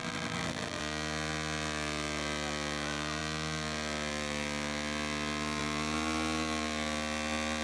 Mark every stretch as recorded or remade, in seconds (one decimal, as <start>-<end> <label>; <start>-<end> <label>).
0.0-0.8 remade; 0.8-7.6 recorded